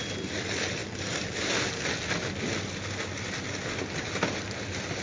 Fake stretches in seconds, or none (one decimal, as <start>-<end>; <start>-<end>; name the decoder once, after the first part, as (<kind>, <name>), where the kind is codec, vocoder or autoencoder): none